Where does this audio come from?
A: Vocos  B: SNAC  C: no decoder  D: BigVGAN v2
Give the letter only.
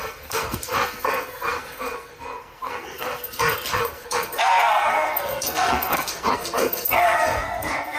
B